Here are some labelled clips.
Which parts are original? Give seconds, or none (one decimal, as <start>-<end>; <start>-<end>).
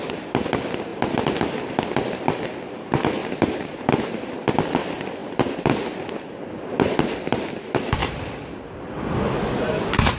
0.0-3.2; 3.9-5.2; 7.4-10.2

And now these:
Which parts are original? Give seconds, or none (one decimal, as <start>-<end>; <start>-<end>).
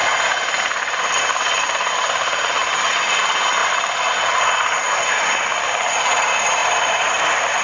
1.2-6.6; 7.1-7.6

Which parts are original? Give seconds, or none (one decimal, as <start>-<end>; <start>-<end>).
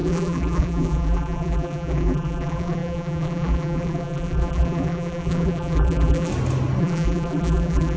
6.3-6.8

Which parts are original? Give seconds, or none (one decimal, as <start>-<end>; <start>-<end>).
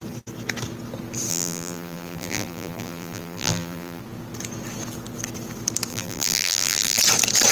0.0-1.3; 4.0-5.9; 7.0-7.5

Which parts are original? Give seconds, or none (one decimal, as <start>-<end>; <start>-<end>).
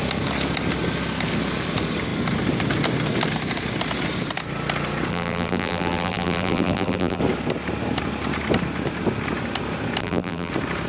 0.0-5.1; 7.2-10.0; 10.5-10.9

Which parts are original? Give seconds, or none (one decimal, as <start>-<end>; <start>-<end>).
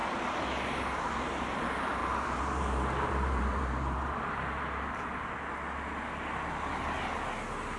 0.0-2.0; 5.3-7.8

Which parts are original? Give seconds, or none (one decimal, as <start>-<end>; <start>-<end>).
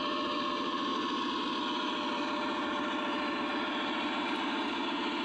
0.9-1.7